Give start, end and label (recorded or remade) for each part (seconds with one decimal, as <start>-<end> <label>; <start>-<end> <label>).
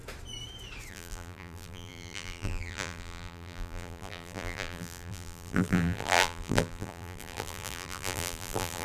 0.0-0.9 recorded; 0.9-8.8 remade